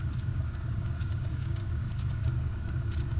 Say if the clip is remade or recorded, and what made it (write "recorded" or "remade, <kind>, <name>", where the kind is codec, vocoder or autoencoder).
remade, codec, DAC